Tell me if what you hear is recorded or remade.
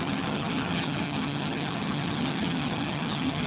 remade